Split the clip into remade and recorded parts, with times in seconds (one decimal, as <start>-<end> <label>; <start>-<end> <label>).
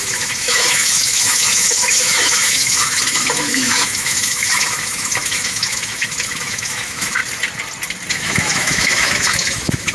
0.0-7.2 remade; 7.2-8.1 recorded; 8.1-9.9 remade